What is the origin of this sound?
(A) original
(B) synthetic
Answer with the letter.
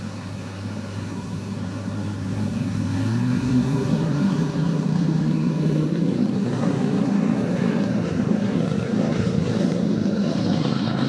B